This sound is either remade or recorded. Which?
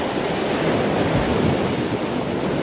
recorded